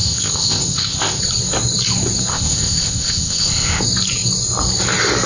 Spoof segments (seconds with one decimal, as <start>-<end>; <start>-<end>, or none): 0.0-1.2; 2.3-3.8